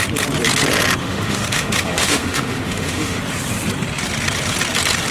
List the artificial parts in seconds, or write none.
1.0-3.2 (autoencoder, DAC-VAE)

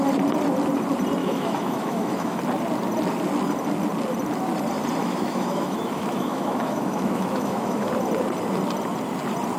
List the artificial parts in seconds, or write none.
1.2-2.4 (autoencoder, DAC-VAE); 5.0-7.9

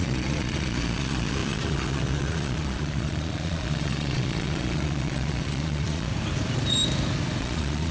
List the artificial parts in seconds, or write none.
0.0-6.1 (vocoder, Vocos); 7.4-7.9

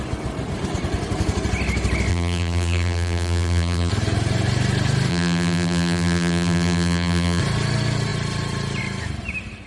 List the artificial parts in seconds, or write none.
2.1-3.9 (vocoder, BigVGAN v2); 5.1-7.4

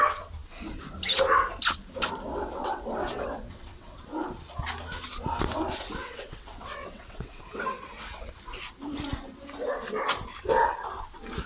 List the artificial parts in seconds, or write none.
2.3-4.0 (vocoder, WaveNeXt); 6.0-8.3

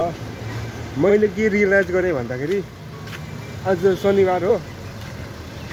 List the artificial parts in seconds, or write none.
none